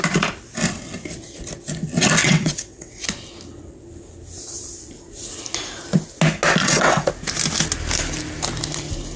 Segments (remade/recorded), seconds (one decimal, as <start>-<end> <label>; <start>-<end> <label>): 0.0-2.2 recorded; 2.2-3.0 remade; 3.0-6.6 recorded; 6.6-7.1 remade; 7.1-9.2 recorded